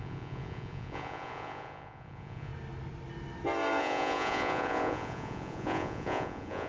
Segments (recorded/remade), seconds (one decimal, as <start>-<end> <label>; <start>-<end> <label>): 0.0-2.5 remade; 2.5-3.8 recorded; 3.8-6.7 remade